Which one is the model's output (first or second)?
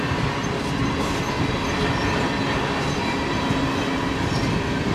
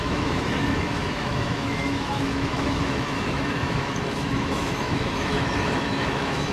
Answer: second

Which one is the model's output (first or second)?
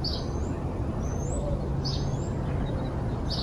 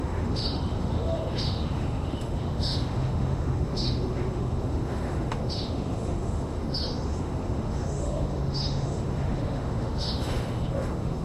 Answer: second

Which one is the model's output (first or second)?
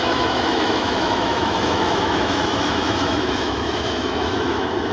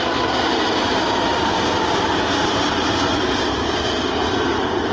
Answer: first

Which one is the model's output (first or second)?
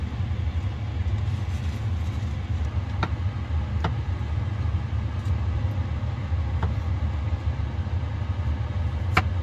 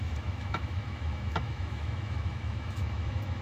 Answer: second